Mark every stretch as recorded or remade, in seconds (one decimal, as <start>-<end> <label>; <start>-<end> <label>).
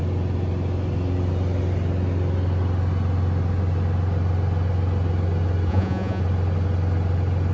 0.0-5.7 recorded; 5.7-6.2 remade; 6.2-7.5 recorded